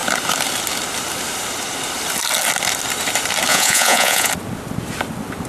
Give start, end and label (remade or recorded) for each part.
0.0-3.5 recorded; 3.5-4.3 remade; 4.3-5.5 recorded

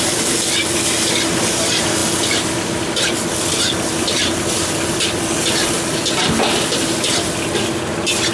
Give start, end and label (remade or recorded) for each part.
0.0-8.3 recorded

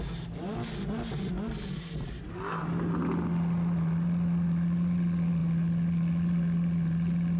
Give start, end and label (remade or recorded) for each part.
0.0-7.4 recorded